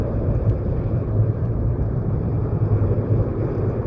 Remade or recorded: remade